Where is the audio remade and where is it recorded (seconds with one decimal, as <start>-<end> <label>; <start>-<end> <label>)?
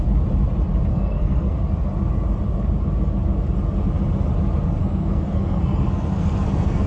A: 0.0-0.9 recorded; 0.9-1.6 remade; 1.6-4.8 recorded; 4.8-6.9 remade